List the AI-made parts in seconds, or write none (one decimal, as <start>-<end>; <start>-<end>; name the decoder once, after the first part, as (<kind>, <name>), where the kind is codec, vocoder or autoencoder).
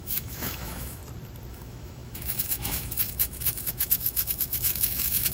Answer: 0.0-1.0 (autoencoder, DAC-VAE); 1.5-5.3